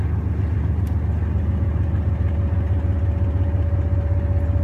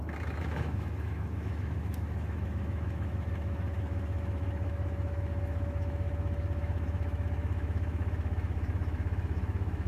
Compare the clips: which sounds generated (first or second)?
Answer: second